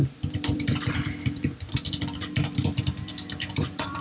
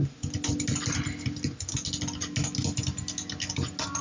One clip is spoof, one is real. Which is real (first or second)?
second